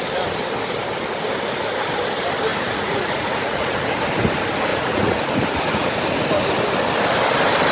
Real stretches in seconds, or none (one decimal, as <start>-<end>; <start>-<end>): 0.0-2.5; 3.8-4.7; 6.0-7.7